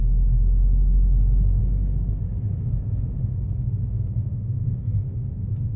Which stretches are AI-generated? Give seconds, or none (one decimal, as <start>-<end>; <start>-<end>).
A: 1.6-2.2; 3.2-5.8

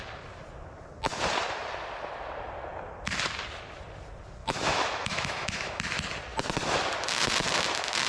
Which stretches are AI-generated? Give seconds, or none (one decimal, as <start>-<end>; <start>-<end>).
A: 4.4-5.8

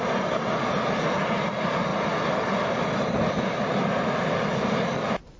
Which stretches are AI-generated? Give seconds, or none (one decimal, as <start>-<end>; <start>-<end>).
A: none

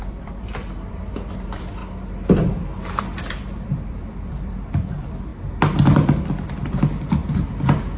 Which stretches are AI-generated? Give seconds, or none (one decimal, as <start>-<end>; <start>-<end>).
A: 0.0-1.8; 3.0-5.3

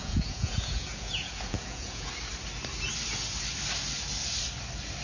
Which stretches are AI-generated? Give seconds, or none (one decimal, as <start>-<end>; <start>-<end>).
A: 0.0-2.1

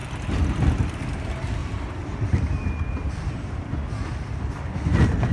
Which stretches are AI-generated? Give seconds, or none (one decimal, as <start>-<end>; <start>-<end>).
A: 0.0-1.0; 1.6-3.8